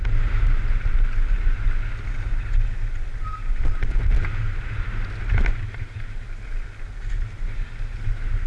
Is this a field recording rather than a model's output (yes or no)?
yes